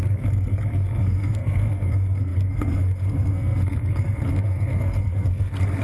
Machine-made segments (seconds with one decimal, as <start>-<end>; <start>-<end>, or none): 0.0-5.8